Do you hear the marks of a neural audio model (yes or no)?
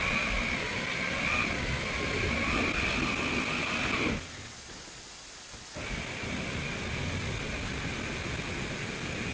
no